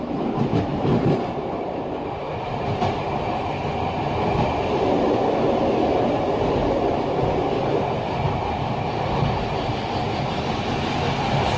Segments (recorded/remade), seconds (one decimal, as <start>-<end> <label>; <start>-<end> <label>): 0.0-0.7 recorded; 0.7-2.8 remade; 2.8-11.6 recorded